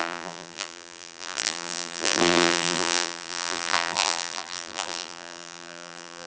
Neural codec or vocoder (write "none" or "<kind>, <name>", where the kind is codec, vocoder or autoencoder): vocoder, BigVGAN v2